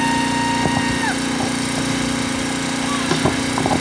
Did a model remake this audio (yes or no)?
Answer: no